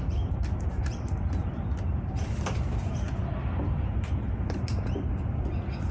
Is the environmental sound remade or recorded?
recorded